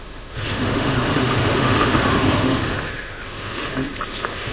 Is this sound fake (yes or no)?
yes